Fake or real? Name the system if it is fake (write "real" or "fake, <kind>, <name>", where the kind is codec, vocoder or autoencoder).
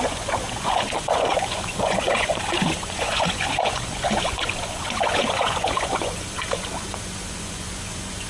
fake, vocoder, Vocos